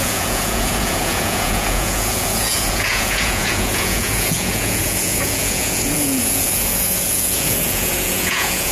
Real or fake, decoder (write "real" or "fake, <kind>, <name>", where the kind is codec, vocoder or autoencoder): fake, vocoder, Vocos